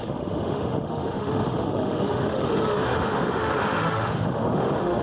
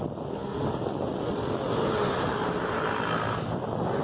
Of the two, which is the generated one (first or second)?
first